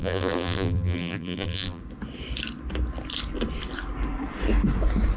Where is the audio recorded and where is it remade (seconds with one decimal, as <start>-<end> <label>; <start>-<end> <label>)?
0.0-1.8 remade; 1.8-5.2 recorded